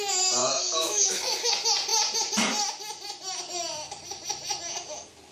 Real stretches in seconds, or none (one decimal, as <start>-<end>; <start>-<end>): 0.0-0.4; 1.5-5.3